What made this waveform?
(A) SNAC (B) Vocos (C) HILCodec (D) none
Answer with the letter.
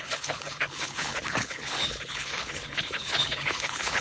C